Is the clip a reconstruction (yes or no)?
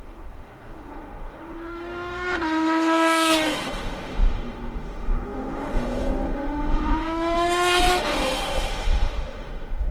yes